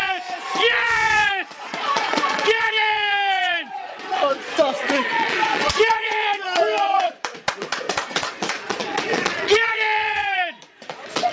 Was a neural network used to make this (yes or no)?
yes